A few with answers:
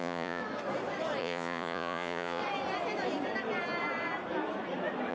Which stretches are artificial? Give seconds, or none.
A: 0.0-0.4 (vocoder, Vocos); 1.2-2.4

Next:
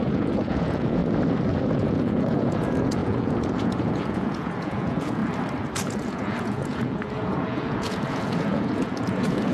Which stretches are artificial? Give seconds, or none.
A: 0.0-1.0 (vocoder, Vocos); 1.7-5.2; 5.9-9.5

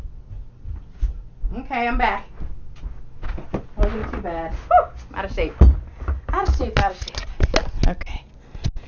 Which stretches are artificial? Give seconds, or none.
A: none

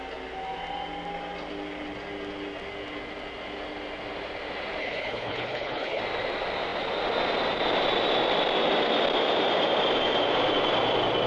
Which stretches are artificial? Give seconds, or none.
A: 4.8-6.0 (codec, HILCodec)

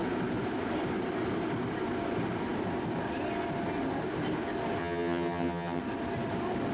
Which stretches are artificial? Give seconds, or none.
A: 4.8-5.8 (vocoder, HiFi-GAN)

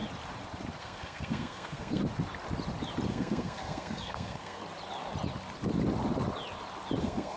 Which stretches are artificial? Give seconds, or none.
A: 0.8-2.0 (codec, SNAC); 3.1-4.6; 7.0-7.4

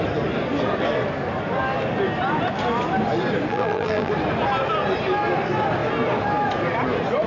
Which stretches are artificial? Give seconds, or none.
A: 3.5-4.1 (vocoder, BigVGAN v2)